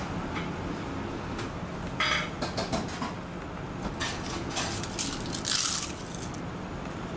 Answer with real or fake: real